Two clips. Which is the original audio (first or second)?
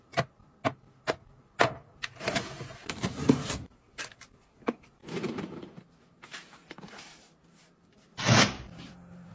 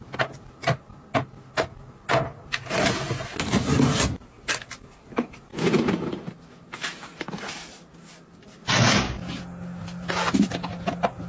second